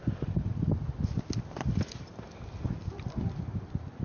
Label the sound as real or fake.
real